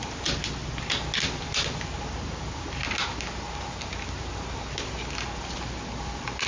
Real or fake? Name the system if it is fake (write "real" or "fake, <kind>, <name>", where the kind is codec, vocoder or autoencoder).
real